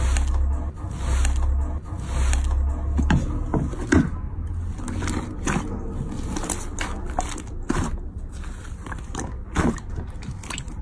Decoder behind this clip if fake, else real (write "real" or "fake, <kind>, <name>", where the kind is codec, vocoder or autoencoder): real